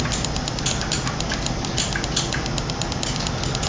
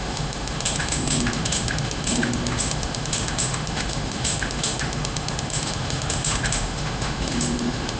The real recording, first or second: first